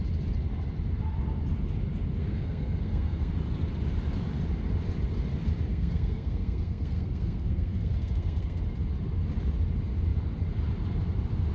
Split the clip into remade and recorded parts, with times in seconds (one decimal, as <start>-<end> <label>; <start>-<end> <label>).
0.0-2.2 recorded; 2.2-3.3 remade; 3.3-5.7 recorded; 5.7-8.6 remade; 8.6-11.5 recorded